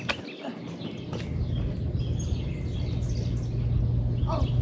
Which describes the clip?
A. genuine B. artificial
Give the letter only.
A